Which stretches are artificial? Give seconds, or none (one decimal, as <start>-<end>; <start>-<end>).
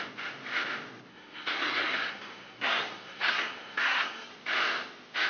1.1-4.3